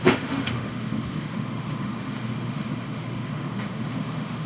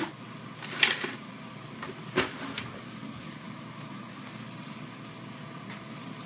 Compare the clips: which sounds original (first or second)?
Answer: second